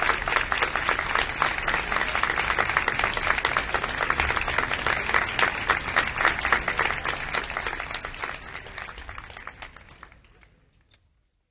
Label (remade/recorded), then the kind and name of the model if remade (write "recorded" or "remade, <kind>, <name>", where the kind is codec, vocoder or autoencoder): recorded